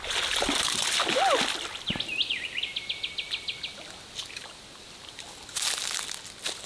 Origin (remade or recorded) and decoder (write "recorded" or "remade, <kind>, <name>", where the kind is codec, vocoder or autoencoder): recorded